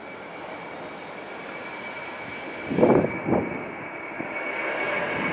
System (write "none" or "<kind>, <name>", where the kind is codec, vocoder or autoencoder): none